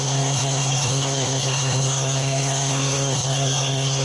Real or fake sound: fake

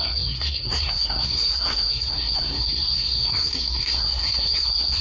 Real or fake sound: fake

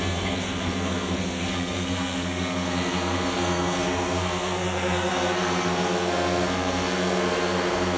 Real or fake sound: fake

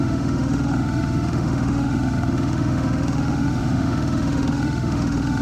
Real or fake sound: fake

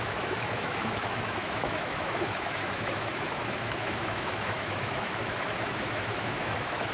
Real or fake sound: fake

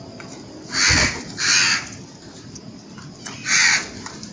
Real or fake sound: real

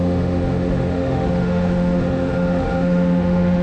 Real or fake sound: fake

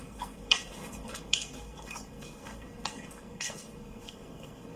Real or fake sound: fake